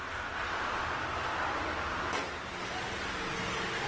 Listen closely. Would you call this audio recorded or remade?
recorded